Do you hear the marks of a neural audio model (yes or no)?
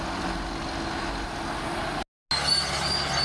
no